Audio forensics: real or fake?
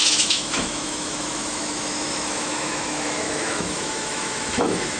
fake